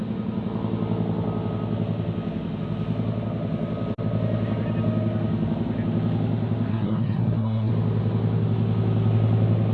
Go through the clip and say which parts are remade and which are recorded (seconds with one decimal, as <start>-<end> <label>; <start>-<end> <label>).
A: 0.0-6.7 recorded; 6.7-7.7 remade; 7.7-9.7 recorded